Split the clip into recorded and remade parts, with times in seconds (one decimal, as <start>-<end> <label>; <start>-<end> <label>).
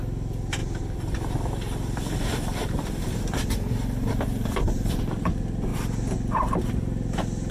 0.0-0.6 recorded; 0.6-5.0 remade; 5.0-7.5 recorded